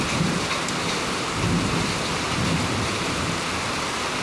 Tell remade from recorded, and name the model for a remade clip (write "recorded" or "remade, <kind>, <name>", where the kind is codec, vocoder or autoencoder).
recorded